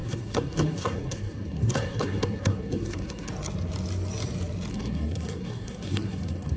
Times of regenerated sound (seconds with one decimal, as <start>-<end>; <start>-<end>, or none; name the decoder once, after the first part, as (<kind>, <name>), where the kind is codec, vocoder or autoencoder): 0.0-3.3 (codec, SNAC); 4.7-6.6